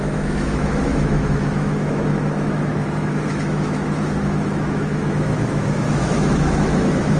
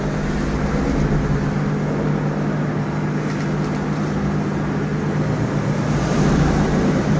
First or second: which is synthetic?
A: first